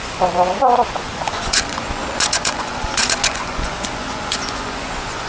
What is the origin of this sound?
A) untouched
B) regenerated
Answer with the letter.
B